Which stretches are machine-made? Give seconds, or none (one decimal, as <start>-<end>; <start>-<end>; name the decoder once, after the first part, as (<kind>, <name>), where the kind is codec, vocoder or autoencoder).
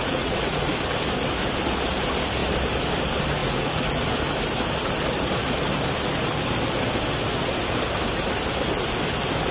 0.0-0.7 (vocoder, Vocos); 3.4-3.9